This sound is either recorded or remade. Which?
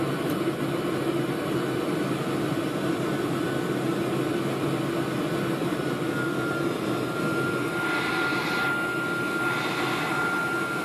recorded